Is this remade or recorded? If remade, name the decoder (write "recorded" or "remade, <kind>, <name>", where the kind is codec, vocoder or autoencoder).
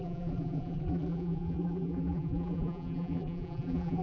remade, vocoder, BigVGAN v2